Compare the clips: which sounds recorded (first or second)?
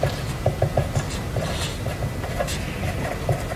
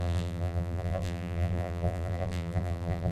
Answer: first